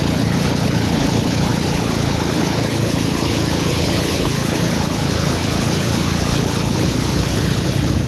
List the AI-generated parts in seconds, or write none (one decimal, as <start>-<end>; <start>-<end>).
0.0-8.1